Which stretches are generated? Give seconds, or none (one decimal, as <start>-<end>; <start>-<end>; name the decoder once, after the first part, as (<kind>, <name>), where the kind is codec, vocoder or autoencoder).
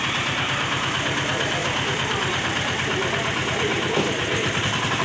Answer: 1.6-4.6 (vocoder, BigVGAN v2)